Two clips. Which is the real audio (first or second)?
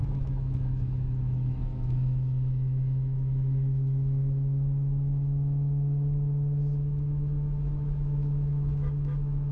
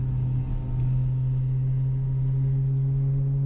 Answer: second